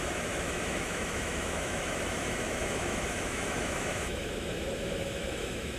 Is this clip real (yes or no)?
no